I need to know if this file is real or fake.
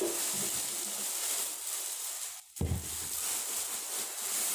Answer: real